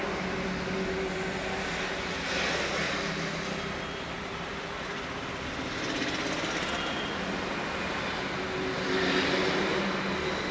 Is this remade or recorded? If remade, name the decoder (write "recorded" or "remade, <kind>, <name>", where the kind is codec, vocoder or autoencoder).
recorded